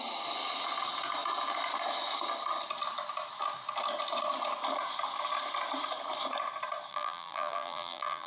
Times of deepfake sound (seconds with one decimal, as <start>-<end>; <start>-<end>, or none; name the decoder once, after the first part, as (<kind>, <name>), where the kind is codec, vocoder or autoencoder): 6.9-8.3 (vocoder, BigVGAN v2)